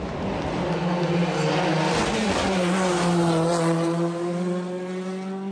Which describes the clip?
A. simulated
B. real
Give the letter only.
B